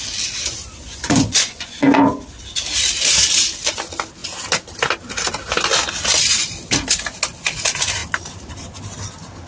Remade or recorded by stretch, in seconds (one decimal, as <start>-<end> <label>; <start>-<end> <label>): 0.0-0.8 recorded; 0.8-2.4 remade; 2.4-9.5 recorded